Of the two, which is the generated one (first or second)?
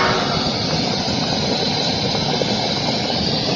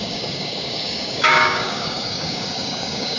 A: second